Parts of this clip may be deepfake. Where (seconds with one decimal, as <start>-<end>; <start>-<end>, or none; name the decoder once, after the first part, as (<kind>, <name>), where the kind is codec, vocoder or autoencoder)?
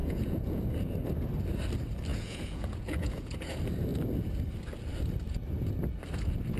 0.0-0.6 (vocoder, Vocos); 2.1-3.4